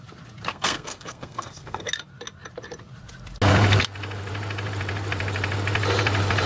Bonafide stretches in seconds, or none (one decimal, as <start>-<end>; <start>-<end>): 0.0-0.5; 1.9-6.5